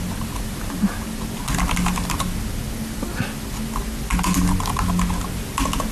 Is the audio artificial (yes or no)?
no